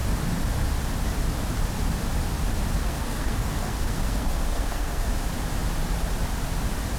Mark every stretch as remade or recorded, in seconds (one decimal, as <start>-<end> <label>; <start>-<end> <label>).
0.0-2.8 recorded; 2.8-5.1 remade; 5.1-7.0 recorded